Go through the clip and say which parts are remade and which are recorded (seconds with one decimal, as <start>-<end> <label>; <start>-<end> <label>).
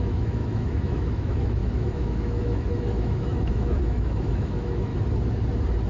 0.0-4.9 remade; 4.9-5.9 recorded